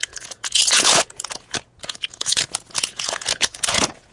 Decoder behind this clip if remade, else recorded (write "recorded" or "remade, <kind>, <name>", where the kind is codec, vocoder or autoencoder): remade, vocoder, Vocos